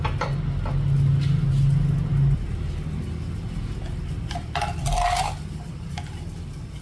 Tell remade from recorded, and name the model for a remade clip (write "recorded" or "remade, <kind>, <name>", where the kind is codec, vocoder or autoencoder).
recorded